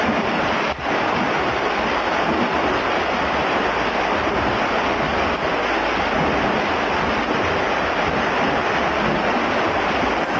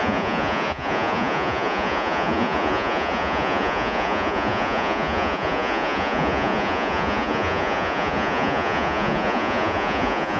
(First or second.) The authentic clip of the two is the first